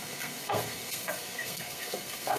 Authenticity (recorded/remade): remade